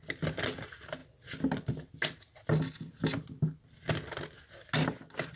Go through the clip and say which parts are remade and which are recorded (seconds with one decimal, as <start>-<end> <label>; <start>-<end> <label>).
0.0-5.4 recorded